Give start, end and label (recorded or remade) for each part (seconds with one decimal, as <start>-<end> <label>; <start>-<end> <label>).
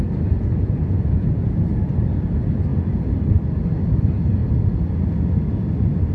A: 0.0-0.4 recorded; 0.4-1.6 remade; 1.6-6.1 recorded